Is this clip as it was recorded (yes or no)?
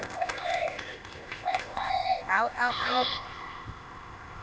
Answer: no